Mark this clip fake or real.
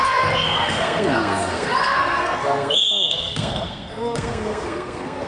fake